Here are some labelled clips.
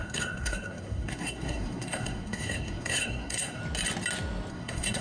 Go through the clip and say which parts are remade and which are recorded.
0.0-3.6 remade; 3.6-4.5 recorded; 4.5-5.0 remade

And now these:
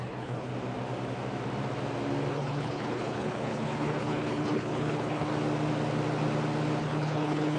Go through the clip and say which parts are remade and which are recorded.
0.0-0.5 remade; 0.5-2.3 recorded; 2.3-5.3 remade; 5.3-6.8 recorded; 6.8-7.6 remade

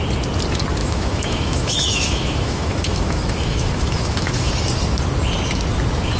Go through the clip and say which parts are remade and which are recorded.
0.0-0.8 recorded; 0.8-4.5 remade; 4.5-6.2 recorded

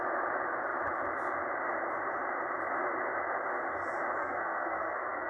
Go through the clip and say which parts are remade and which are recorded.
0.0-4.2 recorded; 4.2-5.3 remade

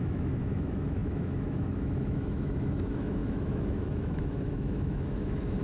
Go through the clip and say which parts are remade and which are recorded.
0.0-5.6 remade